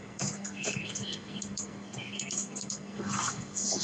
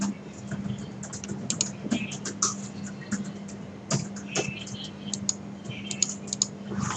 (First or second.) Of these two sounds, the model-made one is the first